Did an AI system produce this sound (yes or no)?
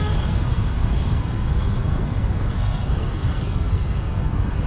yes